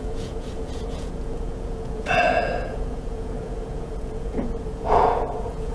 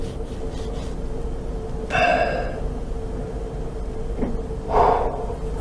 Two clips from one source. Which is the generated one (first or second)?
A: first